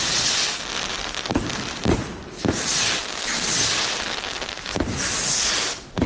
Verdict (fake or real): real